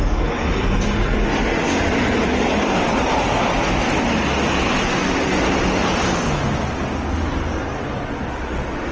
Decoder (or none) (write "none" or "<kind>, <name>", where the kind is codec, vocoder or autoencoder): none